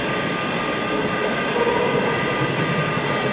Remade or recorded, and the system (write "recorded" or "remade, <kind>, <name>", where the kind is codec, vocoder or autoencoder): recorded